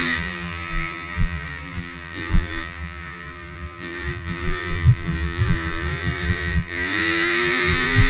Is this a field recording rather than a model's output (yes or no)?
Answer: no